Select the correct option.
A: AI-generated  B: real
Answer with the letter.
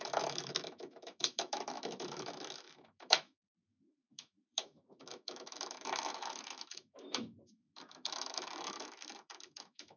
A